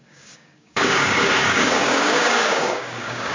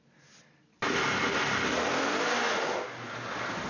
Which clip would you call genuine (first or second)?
second